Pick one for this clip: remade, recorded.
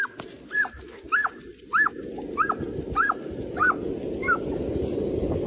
recorded